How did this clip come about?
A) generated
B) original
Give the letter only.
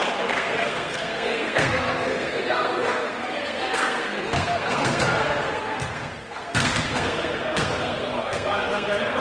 A